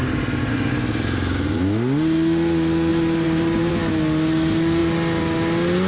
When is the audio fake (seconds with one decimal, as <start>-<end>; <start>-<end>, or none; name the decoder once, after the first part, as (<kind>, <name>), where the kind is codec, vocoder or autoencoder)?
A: 2.9-3.7 (vocoder, BigVGAN v2)